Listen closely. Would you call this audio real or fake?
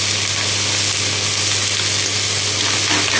real